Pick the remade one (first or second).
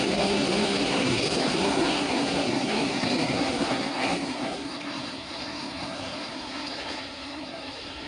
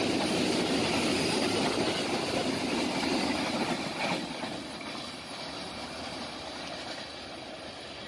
first